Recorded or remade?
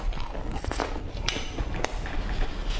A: recorded